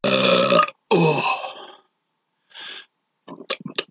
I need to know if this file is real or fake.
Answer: real